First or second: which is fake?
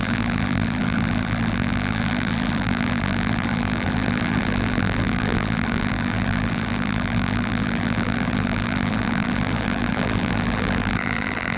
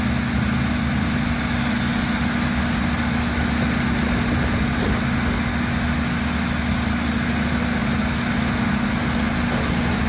first